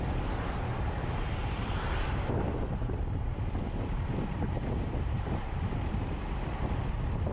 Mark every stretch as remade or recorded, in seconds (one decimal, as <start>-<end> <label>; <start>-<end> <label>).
0.0-1.4 recorded; 1.4-5.6 remade; 5.6-7.3 recorded